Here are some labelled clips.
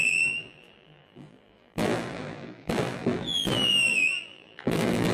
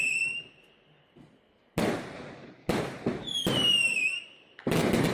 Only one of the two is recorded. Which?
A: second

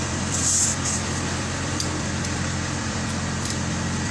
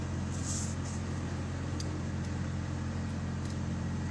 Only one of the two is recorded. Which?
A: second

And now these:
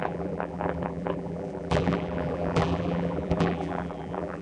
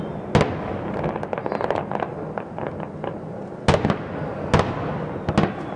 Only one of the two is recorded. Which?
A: second